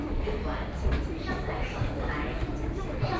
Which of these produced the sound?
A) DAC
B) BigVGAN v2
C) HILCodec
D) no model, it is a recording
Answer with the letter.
D